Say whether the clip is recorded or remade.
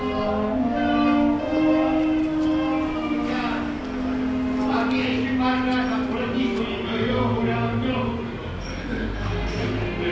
recorded